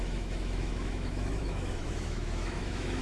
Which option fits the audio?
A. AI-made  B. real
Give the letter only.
A